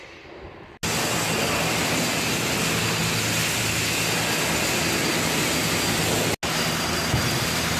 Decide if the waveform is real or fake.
real